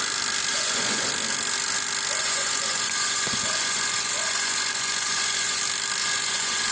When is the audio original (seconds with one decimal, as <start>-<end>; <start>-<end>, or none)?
0.0-0.5; 1.1-2.2; 5.6-6.0